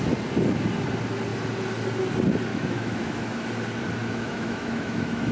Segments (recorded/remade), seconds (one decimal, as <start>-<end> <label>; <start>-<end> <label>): 0.0-2.5 recorded; 2.5-3.4 remade; 3.4-4.0 recorded; 4.0-5.3 remade